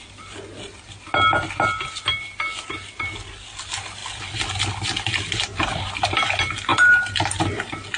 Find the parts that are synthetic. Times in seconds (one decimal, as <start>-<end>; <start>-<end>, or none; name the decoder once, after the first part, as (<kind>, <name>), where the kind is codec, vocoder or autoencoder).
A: none